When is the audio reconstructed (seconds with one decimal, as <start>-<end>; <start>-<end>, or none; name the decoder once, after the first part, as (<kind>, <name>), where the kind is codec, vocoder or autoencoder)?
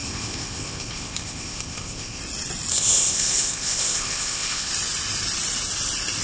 0.0-2.2 (codec, ZipCodec); 2.7-4.7